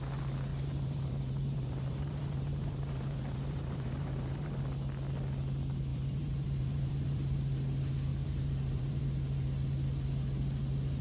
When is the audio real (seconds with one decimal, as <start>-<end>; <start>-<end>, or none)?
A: 0.0-0.5; 4.6-5.9; 7.4-8.1; 9.0-11.0